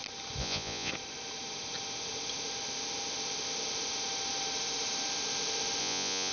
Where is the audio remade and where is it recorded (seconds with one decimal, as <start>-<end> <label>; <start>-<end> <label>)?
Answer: 0.0-0.4 recorded; 0.4-0.9 remade; 0.9-5.8 recorded; 5.8-6.3 remade